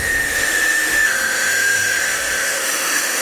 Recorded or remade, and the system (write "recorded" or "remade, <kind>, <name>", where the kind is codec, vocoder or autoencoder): remade, autoencoder, DAC-VAE